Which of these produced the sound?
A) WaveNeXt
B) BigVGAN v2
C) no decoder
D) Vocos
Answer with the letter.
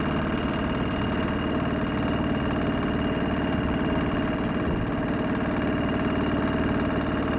C